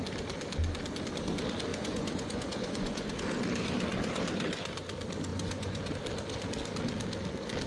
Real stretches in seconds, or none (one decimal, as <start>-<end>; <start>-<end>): 0.0-1.7; 3.1-5.3; 5.9-7.7